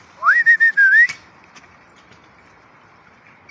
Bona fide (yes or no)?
no